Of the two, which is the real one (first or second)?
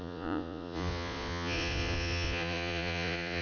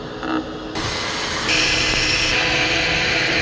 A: second